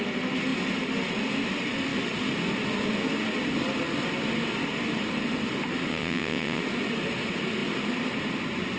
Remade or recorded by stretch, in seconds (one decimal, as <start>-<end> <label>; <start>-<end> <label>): 0.0-5.9 recorded; 5.9-6.6 remade; 6.6-8.8 recorded